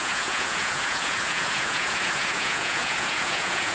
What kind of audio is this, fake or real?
fake